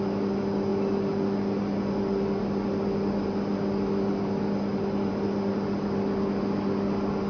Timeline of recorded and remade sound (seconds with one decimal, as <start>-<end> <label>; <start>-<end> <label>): 0.0-7.3 recorded